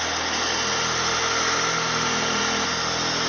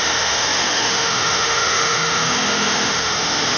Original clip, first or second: first